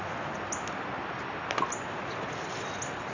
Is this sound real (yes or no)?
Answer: yes